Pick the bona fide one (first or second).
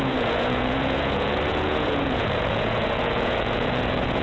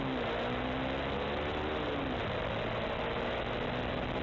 second